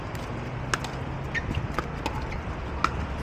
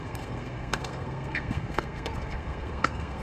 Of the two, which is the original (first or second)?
first